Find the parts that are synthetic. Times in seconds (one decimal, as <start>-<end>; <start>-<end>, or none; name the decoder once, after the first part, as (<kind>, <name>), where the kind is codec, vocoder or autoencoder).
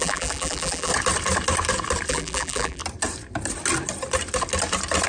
0.0-0.9 (vocoder, BigVGAN v2); 2.1-2.8